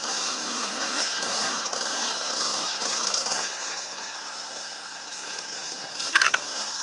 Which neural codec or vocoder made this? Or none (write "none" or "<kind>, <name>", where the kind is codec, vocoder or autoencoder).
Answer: codec, SNAC